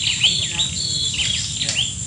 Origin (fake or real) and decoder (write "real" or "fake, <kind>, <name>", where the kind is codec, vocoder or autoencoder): fake, vocoder, BigVGAN v2